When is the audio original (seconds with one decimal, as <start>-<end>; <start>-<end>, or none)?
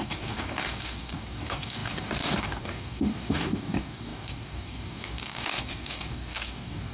none